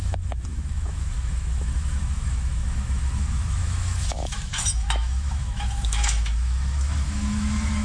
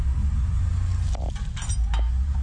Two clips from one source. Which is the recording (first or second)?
second